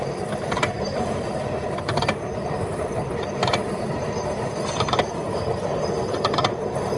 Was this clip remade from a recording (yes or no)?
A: yes